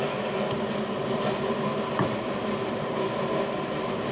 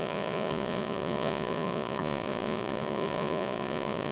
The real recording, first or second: first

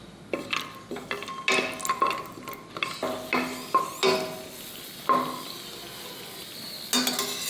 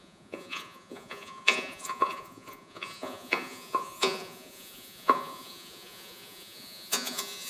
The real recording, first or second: first